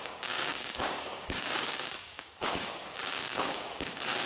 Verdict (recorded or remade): remade